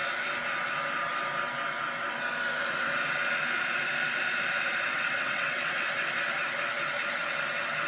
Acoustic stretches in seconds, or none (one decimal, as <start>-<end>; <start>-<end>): 0.0-4.9; 5.7-7.9